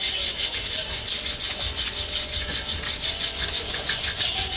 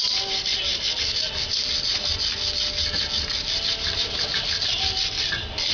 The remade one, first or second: first